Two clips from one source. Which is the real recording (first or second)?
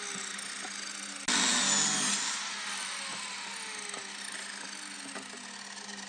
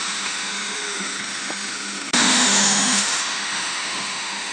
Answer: first